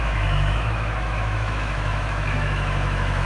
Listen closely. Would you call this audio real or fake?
fake